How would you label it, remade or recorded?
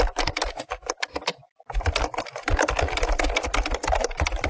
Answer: recorded